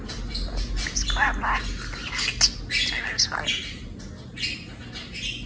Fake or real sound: real